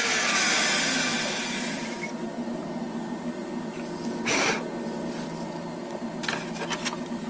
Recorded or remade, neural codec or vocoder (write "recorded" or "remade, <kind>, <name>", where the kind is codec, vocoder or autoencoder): recorded